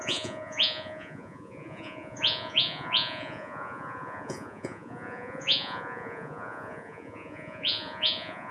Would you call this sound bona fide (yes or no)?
no